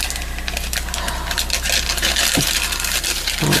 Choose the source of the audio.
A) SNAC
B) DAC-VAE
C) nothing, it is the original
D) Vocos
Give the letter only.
C